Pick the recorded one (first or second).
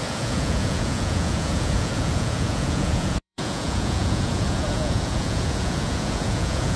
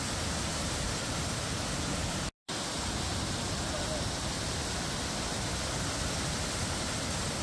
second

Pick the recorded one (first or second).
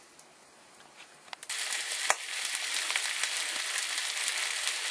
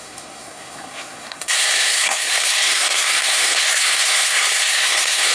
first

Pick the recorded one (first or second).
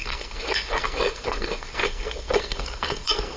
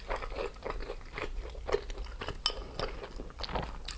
second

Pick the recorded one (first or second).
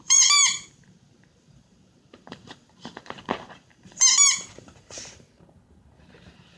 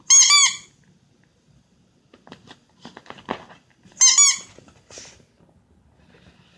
second